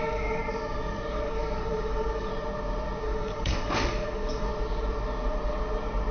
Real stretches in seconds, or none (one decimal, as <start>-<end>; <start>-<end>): 0.4-1.1; 2.3-3.0; 4.5-6.1